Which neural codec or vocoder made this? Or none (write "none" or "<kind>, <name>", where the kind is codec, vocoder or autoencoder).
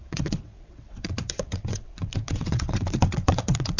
vocoder, WaveNeXt